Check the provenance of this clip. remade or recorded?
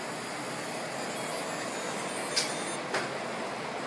recorded